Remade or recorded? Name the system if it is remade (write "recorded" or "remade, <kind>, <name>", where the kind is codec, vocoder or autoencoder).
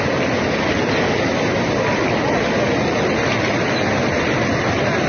recorded